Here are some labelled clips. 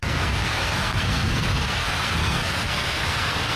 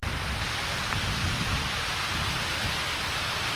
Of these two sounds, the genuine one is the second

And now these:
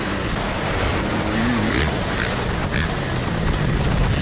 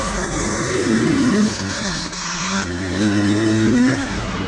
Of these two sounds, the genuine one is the first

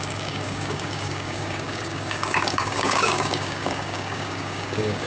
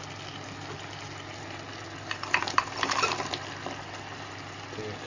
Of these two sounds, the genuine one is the second